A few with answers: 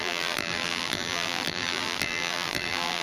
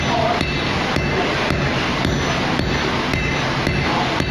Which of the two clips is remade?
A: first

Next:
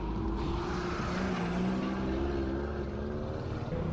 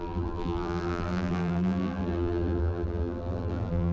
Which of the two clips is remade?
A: second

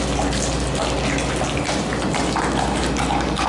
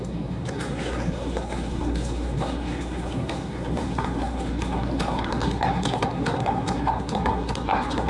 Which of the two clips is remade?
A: second